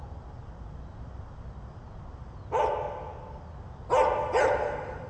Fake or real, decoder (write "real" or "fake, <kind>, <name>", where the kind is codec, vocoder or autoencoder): real